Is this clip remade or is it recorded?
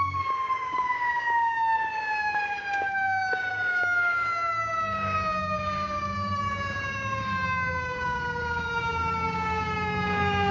remade